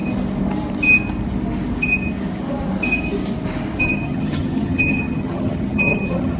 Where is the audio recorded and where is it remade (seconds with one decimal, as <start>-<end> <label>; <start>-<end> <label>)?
0.0-3.8 recorded; 3.8-6.4 remade